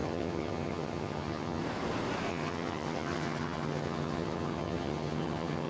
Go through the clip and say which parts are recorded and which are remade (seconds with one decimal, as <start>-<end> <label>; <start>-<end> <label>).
0.0-1.6 remade; 1.6-2.3 recorded; 2.3-5.7 remade